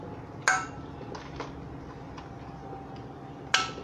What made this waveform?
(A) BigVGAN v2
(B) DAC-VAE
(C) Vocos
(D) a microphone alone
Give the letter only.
D